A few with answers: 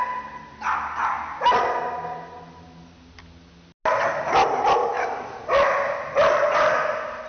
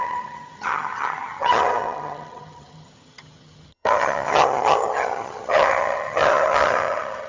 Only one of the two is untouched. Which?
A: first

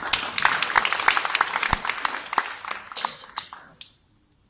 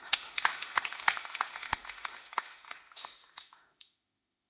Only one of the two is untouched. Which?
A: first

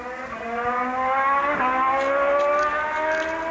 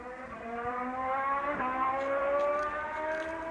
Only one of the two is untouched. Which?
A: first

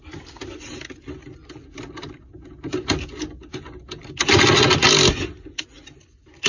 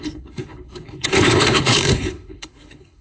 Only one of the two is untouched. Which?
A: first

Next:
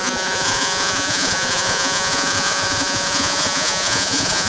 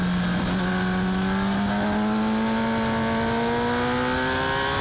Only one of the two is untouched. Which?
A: second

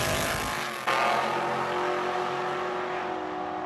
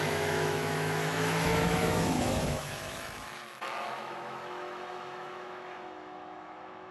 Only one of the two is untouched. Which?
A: first